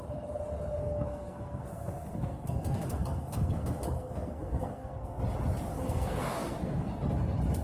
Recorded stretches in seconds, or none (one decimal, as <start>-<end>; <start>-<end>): 0.0-0.8; 5.2-5.7; 6.9-7.6